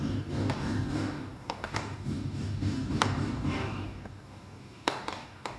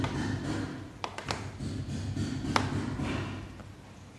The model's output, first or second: first